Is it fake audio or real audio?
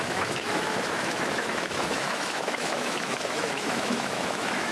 fake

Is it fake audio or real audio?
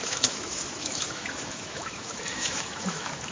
fake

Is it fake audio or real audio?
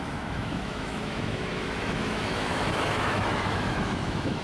fake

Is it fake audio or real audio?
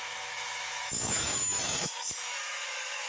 fake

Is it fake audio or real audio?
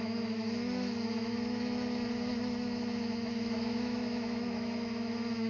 fake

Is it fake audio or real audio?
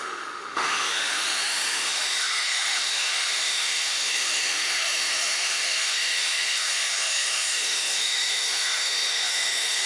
fake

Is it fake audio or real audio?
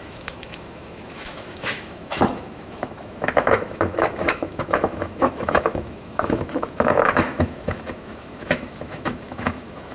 fake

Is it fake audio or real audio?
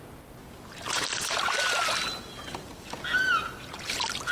real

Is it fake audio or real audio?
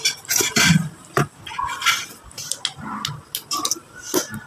real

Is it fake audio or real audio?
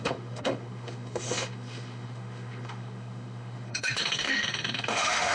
fake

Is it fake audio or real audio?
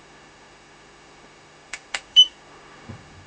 fake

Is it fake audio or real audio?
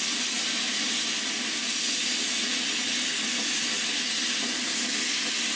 real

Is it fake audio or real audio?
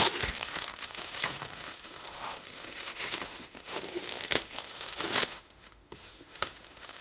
fake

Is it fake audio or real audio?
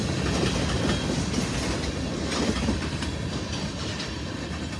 real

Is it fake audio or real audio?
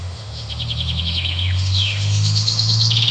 fake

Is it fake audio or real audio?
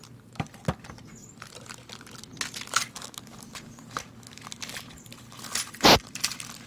real